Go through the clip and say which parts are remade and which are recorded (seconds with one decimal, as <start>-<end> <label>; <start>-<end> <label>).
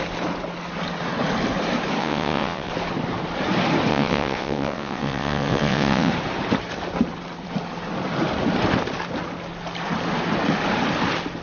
0.0-2.0 recorded; 2.0-2.7 remade; 2.7-3.9 recorded; 3.9-6.1 remade; 6.1-11.4 recorded